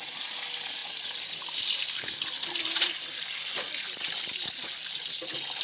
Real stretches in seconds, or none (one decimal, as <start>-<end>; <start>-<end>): 0.0-5.6